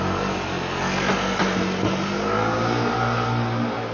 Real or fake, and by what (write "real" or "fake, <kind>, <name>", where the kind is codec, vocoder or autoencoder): real